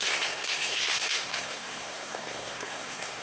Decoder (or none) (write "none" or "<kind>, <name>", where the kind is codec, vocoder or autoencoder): codec, SNAC